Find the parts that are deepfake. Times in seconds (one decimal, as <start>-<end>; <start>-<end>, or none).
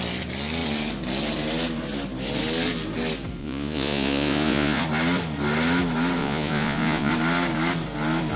3.4-4.8; 6.2-7.1